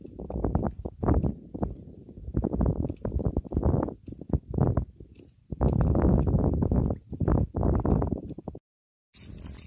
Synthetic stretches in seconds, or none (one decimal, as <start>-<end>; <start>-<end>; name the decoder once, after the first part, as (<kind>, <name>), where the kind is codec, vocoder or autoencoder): none

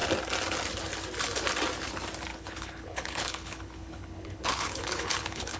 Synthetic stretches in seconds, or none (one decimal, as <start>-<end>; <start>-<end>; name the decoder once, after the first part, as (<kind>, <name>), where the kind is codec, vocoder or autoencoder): 2.3-5.6 (codec, HILCodec)

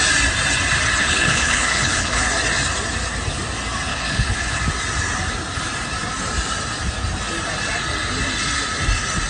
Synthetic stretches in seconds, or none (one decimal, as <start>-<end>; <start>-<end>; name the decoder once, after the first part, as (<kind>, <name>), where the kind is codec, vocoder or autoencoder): 1.0-2.2 (codec, HILCodec); 3.9-4.6

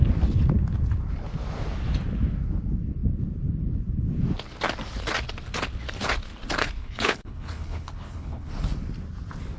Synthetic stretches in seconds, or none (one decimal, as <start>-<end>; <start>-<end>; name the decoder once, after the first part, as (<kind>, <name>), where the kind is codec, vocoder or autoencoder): 6.6-8.5 (codec, HILCodec)

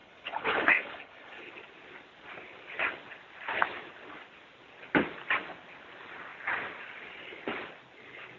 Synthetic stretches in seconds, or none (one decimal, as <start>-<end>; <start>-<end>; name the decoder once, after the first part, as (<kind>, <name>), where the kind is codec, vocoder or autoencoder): 0.0-1.5 (codec, HILCodec)

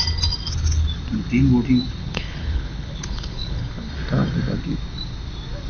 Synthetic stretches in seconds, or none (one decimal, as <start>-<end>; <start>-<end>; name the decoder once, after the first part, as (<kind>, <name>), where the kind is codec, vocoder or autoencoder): 2.0-3.9 (codec, HILCodec)

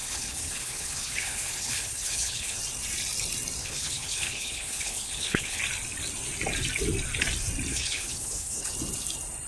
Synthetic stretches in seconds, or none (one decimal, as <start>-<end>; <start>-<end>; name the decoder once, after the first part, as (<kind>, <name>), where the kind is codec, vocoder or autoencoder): 0.0-2.6 (codec, HILCodec); 3.6-5.6; 7.7-8.7